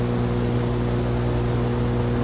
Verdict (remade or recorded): recorded